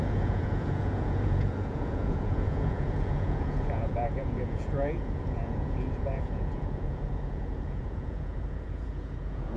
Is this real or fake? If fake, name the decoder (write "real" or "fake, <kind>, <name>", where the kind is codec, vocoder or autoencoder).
fake, vocoder, Vocos